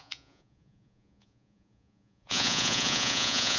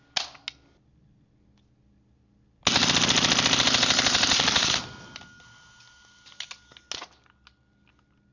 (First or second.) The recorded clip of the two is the second